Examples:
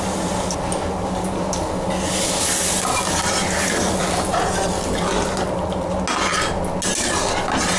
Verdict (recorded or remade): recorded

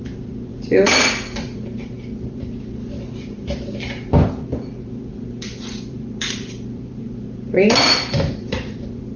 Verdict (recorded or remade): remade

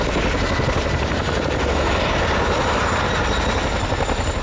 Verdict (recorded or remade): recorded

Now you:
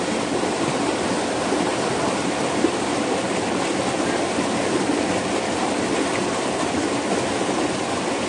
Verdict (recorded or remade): recorded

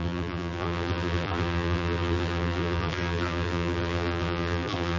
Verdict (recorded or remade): remade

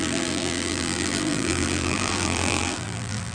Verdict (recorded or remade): remade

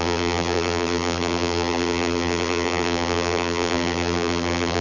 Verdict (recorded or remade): remade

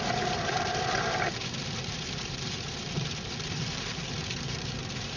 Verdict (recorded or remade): remade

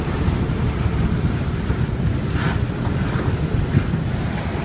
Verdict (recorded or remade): recorded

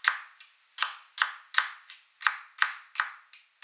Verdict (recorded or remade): recorded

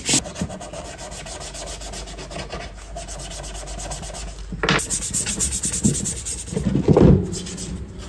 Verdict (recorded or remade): recorded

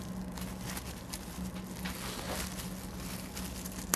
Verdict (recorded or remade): recorded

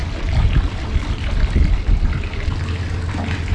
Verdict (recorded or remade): recorded